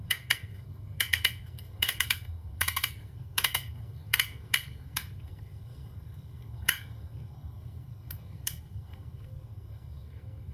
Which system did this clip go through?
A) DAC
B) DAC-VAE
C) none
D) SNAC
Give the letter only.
D